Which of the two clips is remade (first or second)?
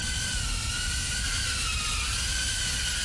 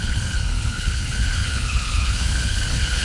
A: second